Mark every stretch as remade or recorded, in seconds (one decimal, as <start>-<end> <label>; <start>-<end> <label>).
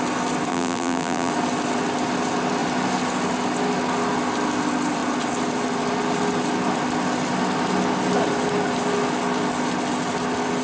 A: 0.0-0.5 recorded; 0.5-1.3 remade; 1.3-10.6 recorded